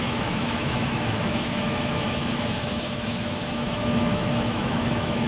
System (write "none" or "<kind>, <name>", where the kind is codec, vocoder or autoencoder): autoencoder, DAC-VAE